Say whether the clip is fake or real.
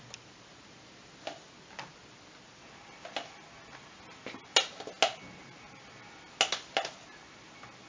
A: real